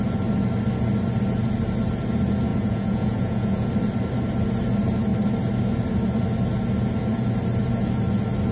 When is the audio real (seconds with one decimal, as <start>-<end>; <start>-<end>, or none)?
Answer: 0.0-2.5; 3.7-8.5